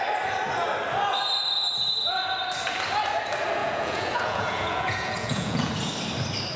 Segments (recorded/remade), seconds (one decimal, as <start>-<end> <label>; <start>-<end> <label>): 0.0-3.6 recorded; 3.6-5.9 remade; 5.9-6.6 recorded